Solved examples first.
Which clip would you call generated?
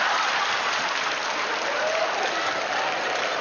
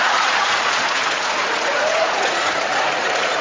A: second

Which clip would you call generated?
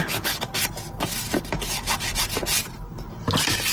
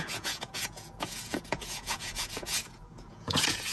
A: second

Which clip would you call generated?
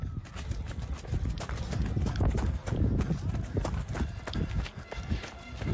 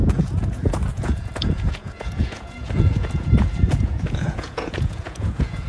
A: second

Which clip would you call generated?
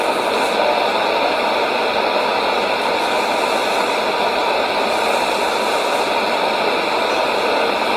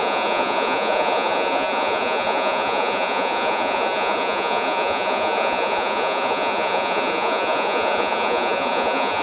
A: second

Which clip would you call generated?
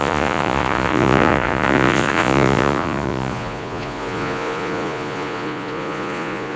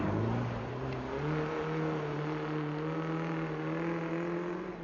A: first